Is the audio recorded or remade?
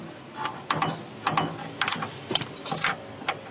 recorded